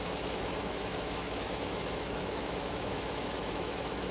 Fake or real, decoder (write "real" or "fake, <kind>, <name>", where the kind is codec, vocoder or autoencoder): fake, autoencoder, DAC-VAE